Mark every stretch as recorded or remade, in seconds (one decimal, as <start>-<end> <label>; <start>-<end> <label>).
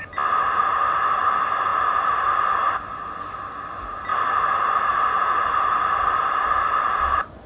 0.0-7.5 recorded